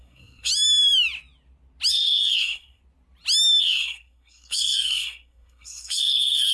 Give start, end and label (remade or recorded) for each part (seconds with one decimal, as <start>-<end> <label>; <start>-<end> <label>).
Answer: 0.0-0.5 remade; 0.5-1.9 recorded; 1.9-2.8 remade; 2.8-3.6 recorded; 3.6-6.5 remade